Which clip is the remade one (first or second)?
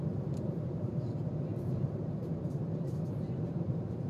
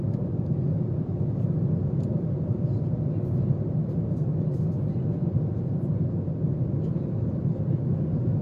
first